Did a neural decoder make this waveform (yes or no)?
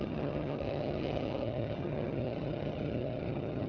yes